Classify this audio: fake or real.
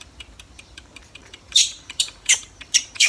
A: fake